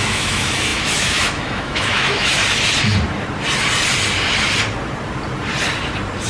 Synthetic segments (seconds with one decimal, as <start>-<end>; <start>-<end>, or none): 0.0-2.4